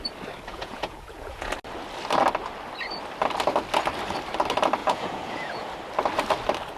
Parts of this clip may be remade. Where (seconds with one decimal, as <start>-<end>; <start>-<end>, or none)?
0.5-1.5; 4.8-5.7